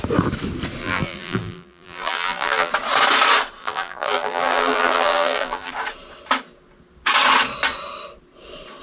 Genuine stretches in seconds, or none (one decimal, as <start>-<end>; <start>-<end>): 0.0-0.8; 2.7-3.6; 5.7-8.8

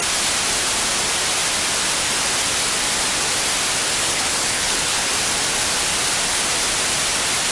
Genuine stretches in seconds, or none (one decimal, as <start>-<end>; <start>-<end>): 0.0-4.0; 5.1-7.5